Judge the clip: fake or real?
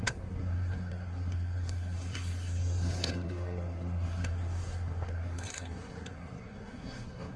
fake